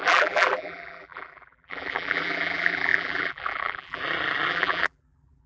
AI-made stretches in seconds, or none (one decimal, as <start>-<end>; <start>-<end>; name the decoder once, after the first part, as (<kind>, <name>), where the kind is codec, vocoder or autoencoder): 0.0-4.0 (vocoder, BigVGAN v2); 4.5-5.5